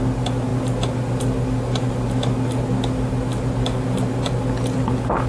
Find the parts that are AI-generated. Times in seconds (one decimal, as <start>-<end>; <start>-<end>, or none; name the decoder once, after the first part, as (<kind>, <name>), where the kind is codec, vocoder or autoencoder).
none

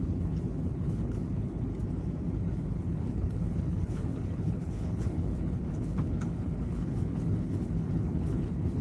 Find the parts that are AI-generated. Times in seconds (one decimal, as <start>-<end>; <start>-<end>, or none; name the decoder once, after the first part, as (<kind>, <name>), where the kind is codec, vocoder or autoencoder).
0.0-1.7 (codec, HILCodec); 2.3-8.8

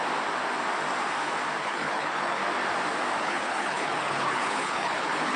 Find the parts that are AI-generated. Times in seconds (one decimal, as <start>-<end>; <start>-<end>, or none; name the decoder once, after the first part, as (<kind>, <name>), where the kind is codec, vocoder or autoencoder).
1.6-2.4 (codec, HILCodec); 3.2-5.4

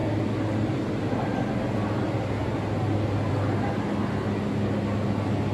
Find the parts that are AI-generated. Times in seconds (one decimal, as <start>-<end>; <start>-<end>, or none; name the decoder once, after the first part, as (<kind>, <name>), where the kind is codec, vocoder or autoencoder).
none

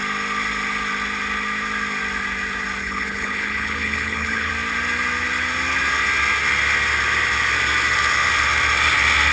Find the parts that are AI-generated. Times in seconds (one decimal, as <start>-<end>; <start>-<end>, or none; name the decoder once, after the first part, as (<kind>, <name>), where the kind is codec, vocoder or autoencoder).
2.8-4.5 (codec, HILCodec)

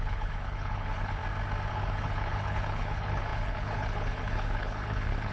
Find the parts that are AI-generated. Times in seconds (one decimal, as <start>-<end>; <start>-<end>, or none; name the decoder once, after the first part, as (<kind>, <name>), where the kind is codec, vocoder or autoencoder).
0.0-1.2 (codec, HILCodec); 1.7-5.3

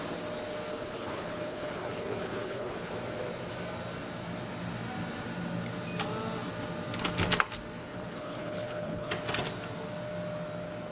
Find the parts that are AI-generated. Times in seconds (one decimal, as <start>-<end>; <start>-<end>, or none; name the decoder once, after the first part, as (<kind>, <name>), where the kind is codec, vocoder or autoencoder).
0.7-2.9 (codec, HILCodec); 7.8-9.1

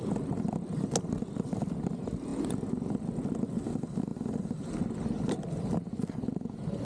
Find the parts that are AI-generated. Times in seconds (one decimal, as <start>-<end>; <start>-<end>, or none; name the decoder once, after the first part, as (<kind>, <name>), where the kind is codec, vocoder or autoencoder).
none